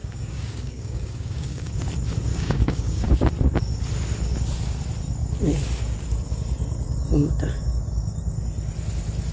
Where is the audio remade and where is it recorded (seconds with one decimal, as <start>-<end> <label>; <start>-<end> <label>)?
0.0-1.7 remade; 1.7-2.3 recorded; 2.3-3.1 remade; 3.1-9.3 recorded